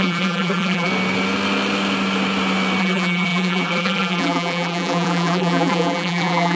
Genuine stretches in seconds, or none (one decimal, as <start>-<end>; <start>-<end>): 0.9-2.8